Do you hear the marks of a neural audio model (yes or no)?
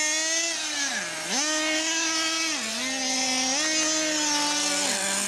no